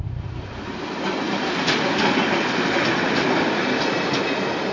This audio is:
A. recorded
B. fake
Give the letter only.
A